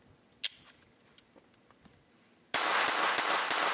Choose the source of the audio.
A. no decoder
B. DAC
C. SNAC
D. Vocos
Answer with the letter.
A